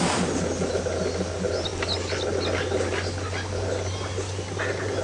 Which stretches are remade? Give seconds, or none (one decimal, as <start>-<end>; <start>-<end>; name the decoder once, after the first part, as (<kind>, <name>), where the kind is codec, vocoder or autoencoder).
none